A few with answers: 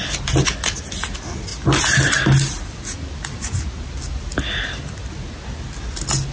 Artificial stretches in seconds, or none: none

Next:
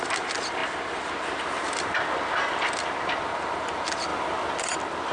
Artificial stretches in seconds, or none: none

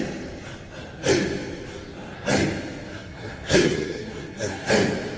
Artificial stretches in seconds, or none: 2.9-4.7 (codec, SNAC)

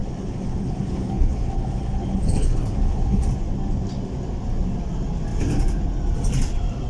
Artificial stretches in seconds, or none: 0.0-3.3 (codec, HILCodec)